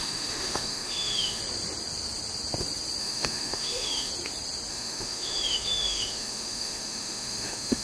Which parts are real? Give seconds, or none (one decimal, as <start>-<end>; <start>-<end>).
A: 1.4-3.0; 4.1-4.7